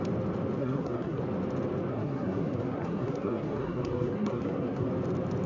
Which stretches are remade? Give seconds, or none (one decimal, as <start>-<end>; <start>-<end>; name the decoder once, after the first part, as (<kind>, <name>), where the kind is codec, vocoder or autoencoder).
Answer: 0.6-1.2 (codec, SNAC); 1.9-4.9